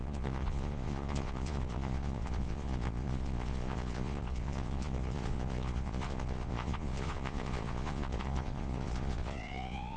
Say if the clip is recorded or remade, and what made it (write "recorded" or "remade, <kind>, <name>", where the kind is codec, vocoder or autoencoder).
remade, vocoder, Vocos